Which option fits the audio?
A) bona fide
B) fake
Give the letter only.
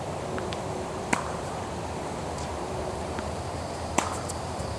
B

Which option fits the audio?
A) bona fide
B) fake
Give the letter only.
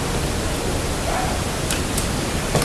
A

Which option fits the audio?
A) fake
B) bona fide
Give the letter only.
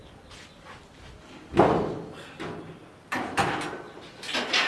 B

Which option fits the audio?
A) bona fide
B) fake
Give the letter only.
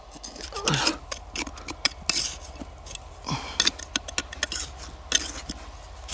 A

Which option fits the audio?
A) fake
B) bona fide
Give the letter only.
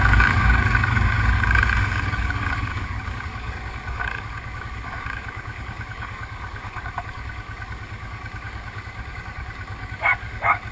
A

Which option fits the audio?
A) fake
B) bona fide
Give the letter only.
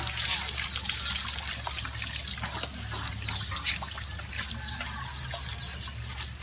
B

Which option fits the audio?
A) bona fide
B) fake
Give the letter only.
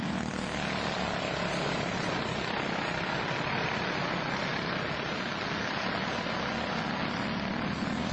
A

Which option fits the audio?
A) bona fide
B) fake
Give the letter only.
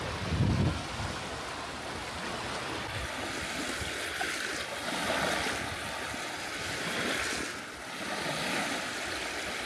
A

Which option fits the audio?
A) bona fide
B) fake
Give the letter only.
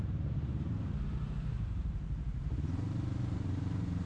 B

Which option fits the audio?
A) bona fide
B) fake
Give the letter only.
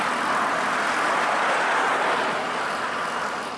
A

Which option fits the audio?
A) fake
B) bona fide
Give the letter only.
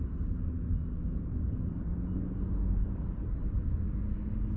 B